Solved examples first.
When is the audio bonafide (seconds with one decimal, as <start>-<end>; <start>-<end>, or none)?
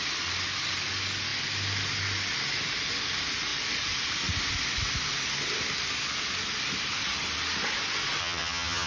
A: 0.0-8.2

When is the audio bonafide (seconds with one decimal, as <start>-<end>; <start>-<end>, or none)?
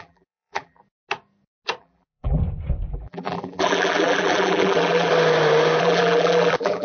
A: 0.8-1.8; 2.4-2.9; 5.1-5.8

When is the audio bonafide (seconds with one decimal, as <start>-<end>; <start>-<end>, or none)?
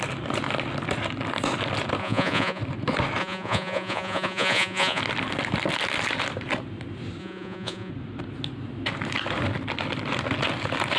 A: 0.0-2.0; 2.6-3.2; 5.0-7.2; 7.9-11.0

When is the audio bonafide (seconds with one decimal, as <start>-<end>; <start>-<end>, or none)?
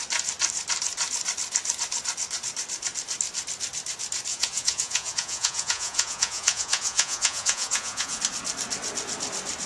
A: 0.0-4.3; 8.2-9.7